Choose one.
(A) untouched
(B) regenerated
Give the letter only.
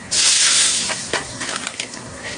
B